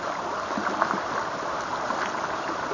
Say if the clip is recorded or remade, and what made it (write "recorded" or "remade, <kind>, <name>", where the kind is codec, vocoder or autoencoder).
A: recorded